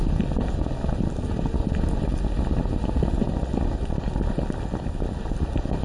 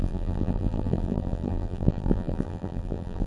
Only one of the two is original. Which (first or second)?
first